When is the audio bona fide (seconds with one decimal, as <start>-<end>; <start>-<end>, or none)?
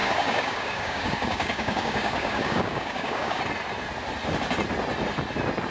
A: 3.4-5.7